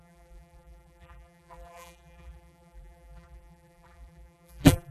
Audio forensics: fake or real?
fake